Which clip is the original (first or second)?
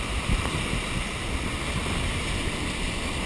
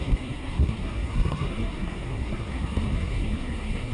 first